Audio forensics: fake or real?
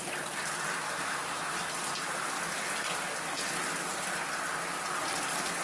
real